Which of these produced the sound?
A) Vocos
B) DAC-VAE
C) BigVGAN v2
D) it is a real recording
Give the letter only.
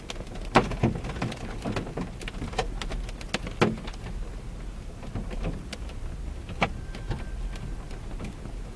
D